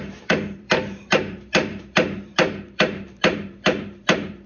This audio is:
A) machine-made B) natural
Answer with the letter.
A